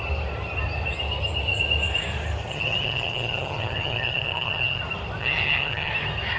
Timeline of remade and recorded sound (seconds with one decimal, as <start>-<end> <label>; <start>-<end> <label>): 0.0-2.5 recorded; 2.5-4.8 remade; 4.8-5.2 recorded; 5.2-5.9 remade; 5.9-6.4 recorded

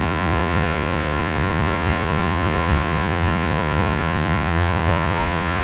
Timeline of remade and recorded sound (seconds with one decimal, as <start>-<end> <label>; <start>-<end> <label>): 0.0-5.6 remade

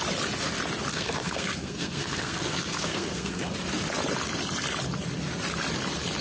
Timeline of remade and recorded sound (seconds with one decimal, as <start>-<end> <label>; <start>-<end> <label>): 0.0-0.9 recorded; 0.9-3.5 remade; 3.5-6.2 recorded

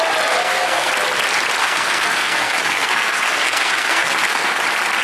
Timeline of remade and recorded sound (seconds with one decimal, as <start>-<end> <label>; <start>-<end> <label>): 0.0-0.4 recorded; 0.4-0.9 remade; 0.9-1.6 recorded; 1.6-4.6 remade; 4.6-5.0 recorded

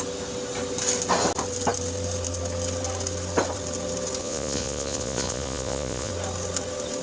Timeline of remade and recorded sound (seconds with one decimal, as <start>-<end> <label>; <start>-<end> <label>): 0.0-4.2 recorded; 4.2-6.1 remade; 6.1-7.0 recorded

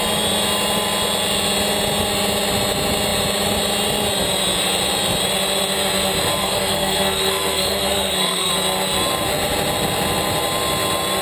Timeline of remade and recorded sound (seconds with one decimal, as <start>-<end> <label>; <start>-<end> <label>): 0.0-6.4 recorded; 6.4-8.5 remade; 8.5-11.2 recorded

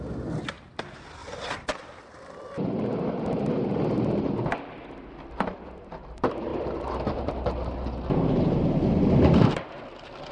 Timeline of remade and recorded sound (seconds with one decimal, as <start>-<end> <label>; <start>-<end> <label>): 0.0-1.2 recorded; 1.2-3.5 remade; 3.5-6.5 recorded; 6.5-7.3 remade; 7.3-10.3 recorded

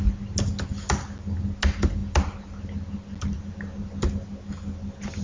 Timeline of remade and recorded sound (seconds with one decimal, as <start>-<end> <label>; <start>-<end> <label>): 0.0-5.2 recorded